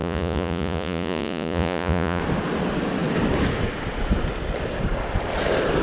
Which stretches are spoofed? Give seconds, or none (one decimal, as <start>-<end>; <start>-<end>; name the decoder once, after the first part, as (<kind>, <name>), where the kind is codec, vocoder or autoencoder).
0.0-2.2 (vocoder, Vocos)